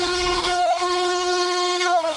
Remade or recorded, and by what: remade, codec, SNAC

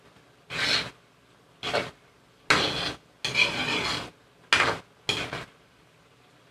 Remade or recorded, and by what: recorded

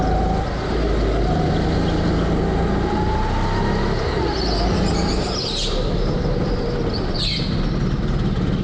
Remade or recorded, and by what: recorded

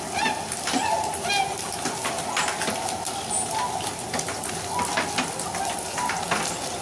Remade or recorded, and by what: recorded